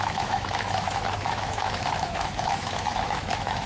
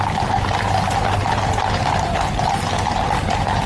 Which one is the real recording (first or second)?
second